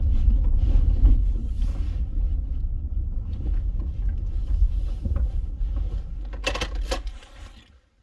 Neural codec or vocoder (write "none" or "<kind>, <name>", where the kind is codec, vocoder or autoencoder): none